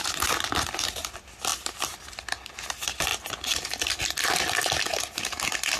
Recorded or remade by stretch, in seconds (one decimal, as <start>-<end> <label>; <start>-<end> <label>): 0.0-1.5 recorded; 1.5-2.1 remade; 2.1-5.8 recorded